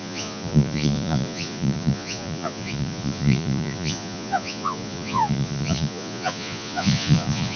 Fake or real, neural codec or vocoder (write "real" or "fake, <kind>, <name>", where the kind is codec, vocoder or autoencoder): fake, vocoder, Vocos